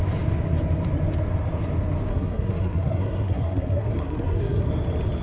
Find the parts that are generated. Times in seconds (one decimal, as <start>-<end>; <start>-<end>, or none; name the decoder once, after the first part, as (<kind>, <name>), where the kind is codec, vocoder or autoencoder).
2.1-4.7 (codec, SNAC)

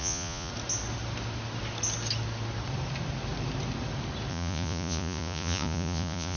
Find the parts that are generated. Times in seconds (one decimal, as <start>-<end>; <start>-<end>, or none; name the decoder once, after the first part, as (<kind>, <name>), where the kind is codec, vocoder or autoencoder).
0.0-0.5 (vocoder, Vocos); 4.3-6.4

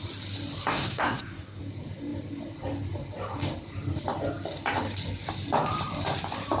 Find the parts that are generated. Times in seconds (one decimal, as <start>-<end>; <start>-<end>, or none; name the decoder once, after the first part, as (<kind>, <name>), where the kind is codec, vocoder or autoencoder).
0.7-1.6 (codec, SNAC)

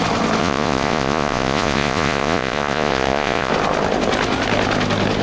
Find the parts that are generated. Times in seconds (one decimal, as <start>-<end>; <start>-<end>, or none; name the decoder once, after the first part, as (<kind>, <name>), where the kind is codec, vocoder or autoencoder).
0.4-3.5 (vocoder, Vocos)